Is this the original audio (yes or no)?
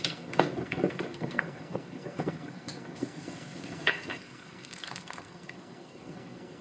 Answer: no